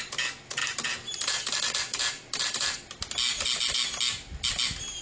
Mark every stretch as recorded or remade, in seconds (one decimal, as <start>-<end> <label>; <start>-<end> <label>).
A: 0.0-5.0 recorded